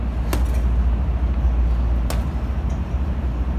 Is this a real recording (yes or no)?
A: yes